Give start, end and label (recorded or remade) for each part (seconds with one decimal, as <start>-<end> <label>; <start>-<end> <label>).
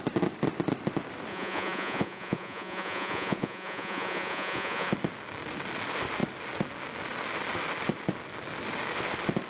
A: 0.0-1.3 recorded; 1.3-4.9 remade; 4.9-9.5 recorded